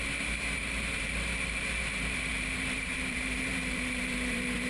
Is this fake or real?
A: fake